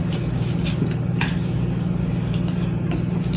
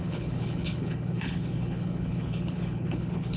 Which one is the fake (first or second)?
second